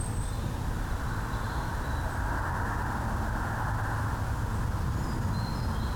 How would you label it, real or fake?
real